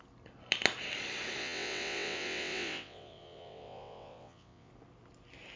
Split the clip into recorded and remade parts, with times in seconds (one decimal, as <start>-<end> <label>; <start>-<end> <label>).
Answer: 0.0-1.4 recorded; 1.4-4.7 remade; 4.7-5.6 recorded